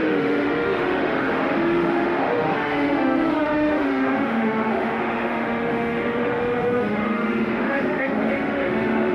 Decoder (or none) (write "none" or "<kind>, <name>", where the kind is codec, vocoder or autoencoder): autoencoder, DAC-VAE